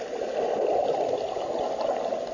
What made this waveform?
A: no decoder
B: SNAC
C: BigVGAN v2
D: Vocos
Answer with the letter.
A